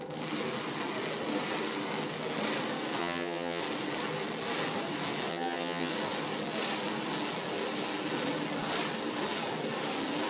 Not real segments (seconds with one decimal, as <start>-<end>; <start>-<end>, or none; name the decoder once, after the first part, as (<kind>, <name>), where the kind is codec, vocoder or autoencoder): 3.0-3.6 (vocoder, HiFi-GAN); 5.3-5.9